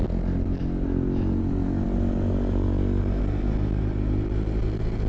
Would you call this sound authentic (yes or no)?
yes